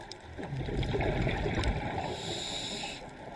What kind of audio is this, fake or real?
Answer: real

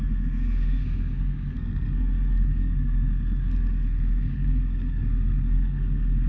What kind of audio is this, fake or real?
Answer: fake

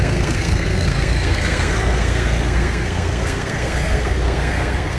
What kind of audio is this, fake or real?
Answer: fake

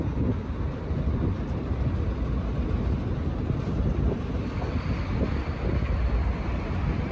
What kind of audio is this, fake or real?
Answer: real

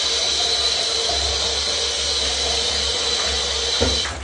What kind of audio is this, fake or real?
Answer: real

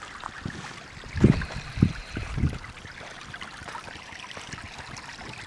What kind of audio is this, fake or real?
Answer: real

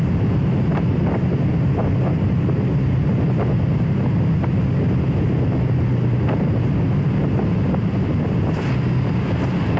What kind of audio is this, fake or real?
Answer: real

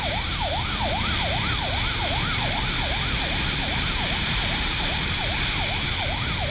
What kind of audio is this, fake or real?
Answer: real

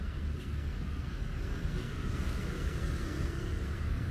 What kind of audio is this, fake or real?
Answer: fake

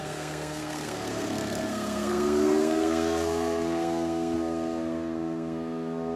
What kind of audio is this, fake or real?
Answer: fake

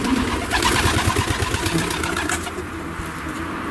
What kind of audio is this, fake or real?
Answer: real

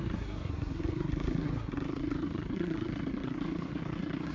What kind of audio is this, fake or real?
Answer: fake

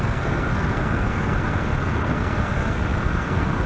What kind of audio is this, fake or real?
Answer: fake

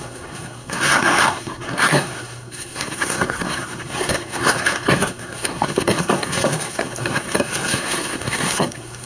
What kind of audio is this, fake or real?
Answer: fake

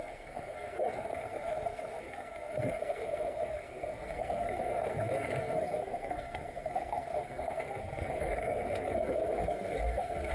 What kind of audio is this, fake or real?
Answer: fake